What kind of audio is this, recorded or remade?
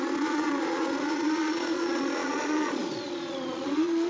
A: remade